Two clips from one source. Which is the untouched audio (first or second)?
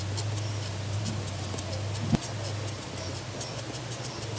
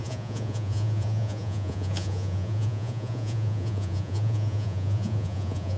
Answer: first